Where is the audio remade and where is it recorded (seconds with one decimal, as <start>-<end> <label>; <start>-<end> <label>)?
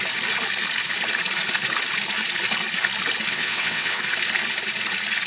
0.0-3.3 recorded; 3.3-4.0 remade; 4.0-5.3 recorded